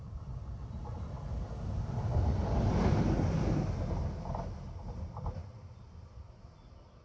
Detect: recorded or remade recorded